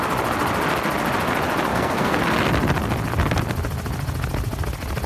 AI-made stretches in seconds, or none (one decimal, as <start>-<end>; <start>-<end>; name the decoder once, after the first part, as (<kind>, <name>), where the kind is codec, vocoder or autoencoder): 1.7-2.2 (codec, SNAC)